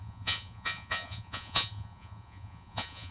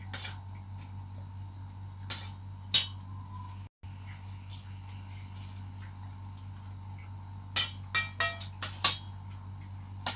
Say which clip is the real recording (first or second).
second